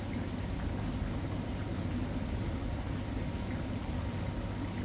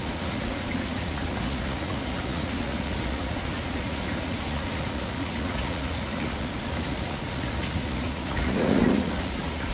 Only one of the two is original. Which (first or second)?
first